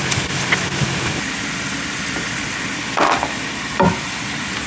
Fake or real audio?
real